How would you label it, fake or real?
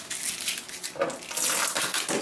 real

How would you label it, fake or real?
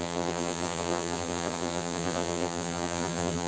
fake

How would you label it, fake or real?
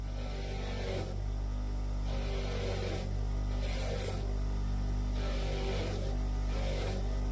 real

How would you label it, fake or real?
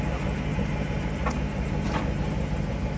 real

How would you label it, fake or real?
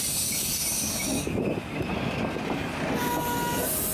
real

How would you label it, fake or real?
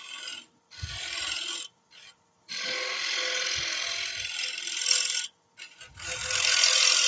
real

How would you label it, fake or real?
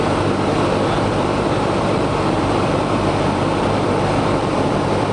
fake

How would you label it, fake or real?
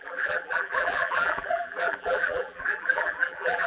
fake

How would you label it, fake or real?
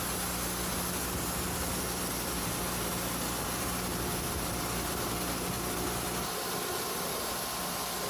real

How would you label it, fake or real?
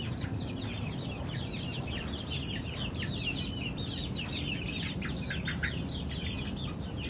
real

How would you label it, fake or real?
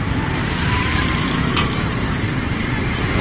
fake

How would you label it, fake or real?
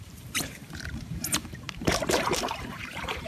fake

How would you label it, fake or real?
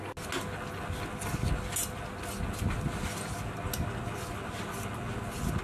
real